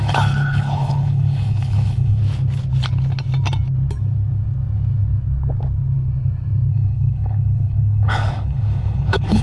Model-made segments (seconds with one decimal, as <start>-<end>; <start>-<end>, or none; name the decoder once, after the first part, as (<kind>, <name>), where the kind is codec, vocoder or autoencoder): 0.0-2.2 (codec, HILCodec); 6.7-9.4

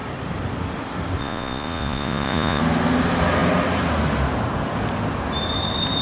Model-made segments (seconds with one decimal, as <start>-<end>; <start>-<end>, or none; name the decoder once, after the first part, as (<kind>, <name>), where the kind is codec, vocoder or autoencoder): 1.2-2.6 (vocoder, Vocos)

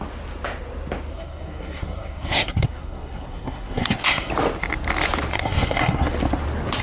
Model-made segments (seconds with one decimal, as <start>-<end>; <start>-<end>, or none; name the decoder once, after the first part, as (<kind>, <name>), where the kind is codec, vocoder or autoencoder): 1.1-4.3 (codec, SNAC); 5.3-6.1